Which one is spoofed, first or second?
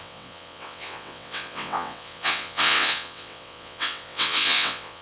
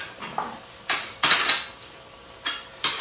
first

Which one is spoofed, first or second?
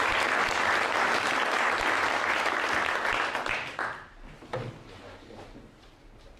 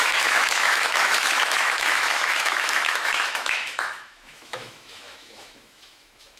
second